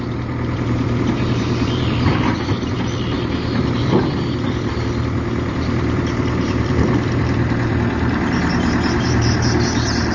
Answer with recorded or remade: remade